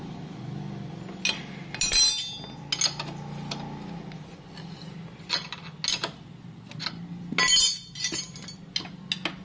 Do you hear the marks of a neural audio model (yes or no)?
no